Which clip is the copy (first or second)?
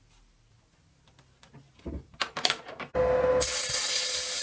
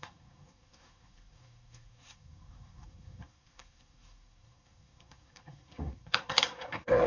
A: second